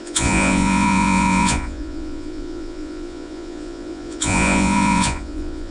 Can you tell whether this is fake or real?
fake